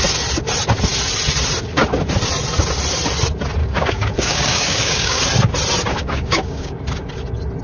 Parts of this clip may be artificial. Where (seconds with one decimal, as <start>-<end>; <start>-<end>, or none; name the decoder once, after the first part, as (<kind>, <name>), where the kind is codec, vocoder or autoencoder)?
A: 3.6-5.2 (codec, DAC); 5.9-6.8

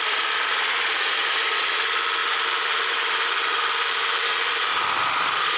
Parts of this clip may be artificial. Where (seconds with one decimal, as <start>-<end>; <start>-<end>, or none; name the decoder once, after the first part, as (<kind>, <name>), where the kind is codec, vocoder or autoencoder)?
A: 2.2-4.7 (vocoder, BigVGAN v2)

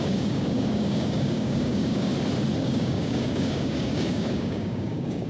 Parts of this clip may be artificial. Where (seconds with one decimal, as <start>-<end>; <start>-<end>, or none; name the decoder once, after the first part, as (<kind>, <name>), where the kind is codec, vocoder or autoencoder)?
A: 0.0-2.1 (codec, DAC); 2.6-5.3

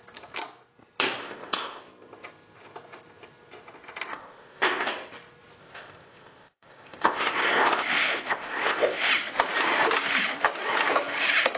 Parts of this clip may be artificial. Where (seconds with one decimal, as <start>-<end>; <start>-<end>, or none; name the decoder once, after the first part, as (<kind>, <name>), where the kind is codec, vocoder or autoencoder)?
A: 1.2-1.8 (codec, ZipCodec); 4.1-4.9; 5.6-9.1

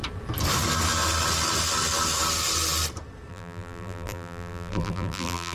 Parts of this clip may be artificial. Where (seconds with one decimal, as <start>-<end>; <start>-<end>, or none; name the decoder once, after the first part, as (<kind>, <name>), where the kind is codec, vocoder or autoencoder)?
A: 3.3-5.5 (vocoder, BigVGAN v2)

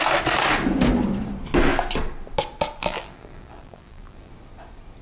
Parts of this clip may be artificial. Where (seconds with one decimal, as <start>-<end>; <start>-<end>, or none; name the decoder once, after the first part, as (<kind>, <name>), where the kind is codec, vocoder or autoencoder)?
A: 2.8-4.3 (vocoder, BigVGAN v2)